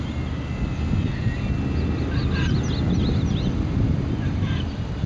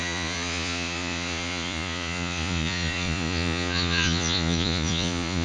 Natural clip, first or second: first